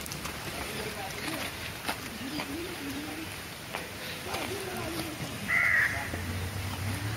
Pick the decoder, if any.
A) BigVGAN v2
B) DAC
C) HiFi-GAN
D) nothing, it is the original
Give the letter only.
A